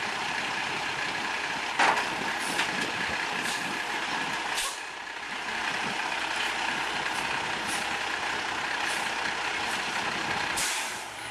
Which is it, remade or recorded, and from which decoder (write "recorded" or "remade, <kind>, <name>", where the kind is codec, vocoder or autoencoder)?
remade, vocoder, BigVGAN v2